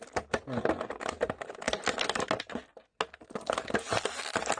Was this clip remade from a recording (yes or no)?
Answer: no